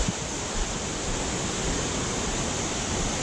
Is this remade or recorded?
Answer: recorded